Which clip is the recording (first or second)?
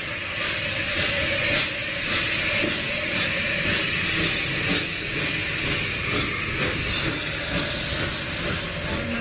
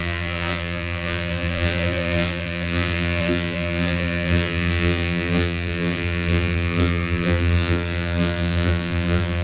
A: first